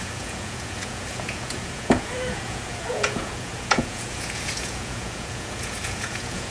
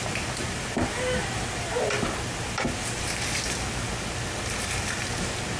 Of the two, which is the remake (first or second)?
first